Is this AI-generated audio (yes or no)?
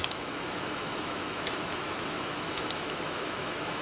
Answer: yes